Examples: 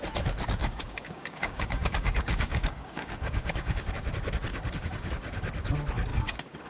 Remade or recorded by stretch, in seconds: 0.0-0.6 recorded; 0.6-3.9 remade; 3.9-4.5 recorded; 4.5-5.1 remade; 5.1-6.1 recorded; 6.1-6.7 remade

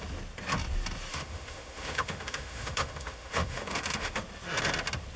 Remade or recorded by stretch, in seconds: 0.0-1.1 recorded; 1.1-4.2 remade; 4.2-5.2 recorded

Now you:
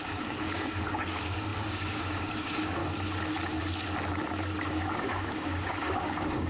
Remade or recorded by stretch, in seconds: 0.0-2.8 remade; 2.8-4.7 recorded; 4.7-6.5 remade

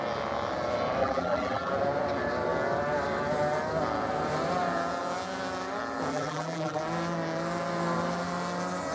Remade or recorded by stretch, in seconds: 0.0-1.0 recorded; 1.0-1.7 remade; 1.7-6.1 recorded; 6.1-6.8 remade; 6.8-8.9 recorded